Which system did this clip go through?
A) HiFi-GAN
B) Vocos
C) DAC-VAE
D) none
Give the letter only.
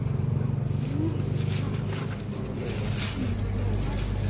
D